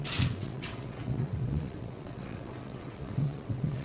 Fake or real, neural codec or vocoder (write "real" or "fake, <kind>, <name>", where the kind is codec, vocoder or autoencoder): fake, vocoder, WaveNeXt